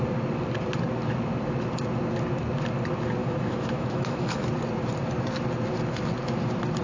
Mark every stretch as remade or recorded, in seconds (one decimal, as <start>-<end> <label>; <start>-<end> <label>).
0.0-3.2 recorded; 3.2-4.5 remade; 4.5-6.8 recorded